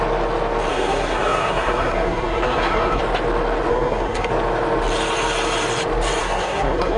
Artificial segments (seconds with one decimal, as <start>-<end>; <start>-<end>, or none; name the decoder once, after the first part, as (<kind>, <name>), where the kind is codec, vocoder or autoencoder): 0.7-3.0 (codec, SNAC); 3.7-4.3; 6.2-7.0